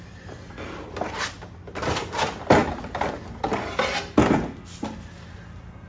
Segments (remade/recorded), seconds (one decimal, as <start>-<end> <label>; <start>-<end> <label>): 0.0-2.6 recorded; 2.6-3.5 remade; 3.5-5.9 recorded